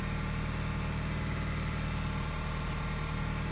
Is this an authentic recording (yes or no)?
yes